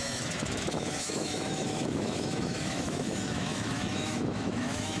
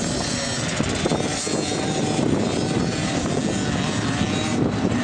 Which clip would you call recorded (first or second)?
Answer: second